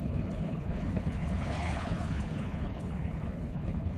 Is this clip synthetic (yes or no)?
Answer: yes